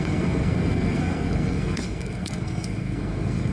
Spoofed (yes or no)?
yes